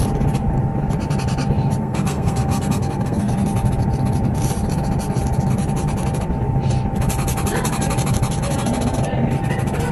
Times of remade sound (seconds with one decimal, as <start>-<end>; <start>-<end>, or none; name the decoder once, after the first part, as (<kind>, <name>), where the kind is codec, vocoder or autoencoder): 1.8-3.4 (codec, SNAC)